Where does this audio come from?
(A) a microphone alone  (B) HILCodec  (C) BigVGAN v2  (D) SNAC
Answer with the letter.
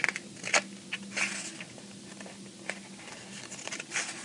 A